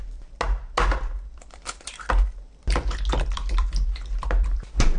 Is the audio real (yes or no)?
yes